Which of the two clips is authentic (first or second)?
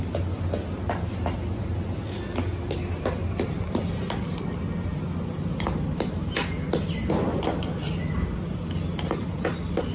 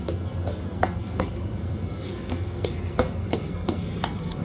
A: first